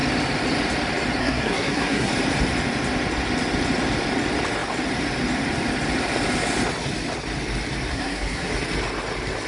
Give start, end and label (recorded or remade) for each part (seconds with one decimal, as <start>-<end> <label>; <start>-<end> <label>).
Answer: 0.0-1.2 recorded; 1.2-2.1 remade; 2.1-7.9 recorded; 7.9-8.5 remade; 8.5-9.5 recorded